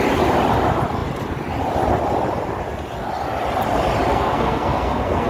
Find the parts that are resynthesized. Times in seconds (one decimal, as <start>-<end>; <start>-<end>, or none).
4.1-5.3